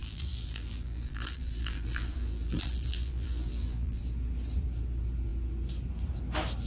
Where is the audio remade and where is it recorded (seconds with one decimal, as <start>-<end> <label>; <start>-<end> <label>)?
0.0-4.0 remade; 4.0-6.7 recorded